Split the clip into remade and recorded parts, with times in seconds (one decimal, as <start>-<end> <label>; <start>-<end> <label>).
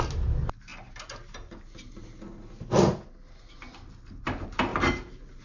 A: 0.0-5.4 recorded